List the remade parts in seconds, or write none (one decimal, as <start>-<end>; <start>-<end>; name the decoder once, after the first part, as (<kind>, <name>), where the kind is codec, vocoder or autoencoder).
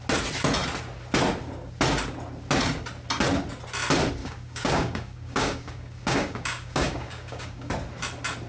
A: 4.2-7.7 (codec, DAC)